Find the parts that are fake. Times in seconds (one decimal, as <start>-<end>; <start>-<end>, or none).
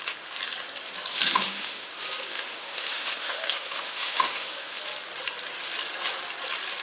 1.1-1.9; 2.3-4.8